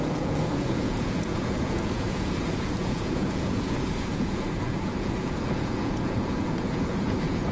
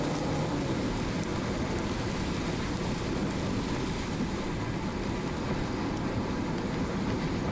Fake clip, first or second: first